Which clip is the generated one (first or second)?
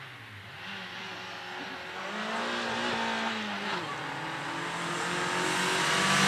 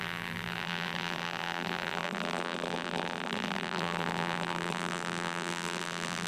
second